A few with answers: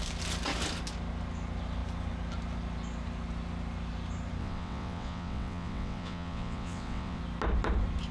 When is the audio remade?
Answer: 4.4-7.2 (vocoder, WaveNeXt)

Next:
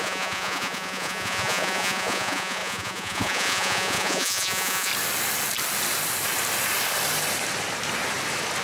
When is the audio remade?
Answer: 0.0-4.9 (vocoder, Vocos)